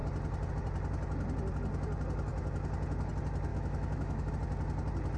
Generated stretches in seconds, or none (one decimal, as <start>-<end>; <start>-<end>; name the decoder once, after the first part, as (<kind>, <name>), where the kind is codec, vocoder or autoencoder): 3.5-4.3 (autoencoder, DAC-VAE)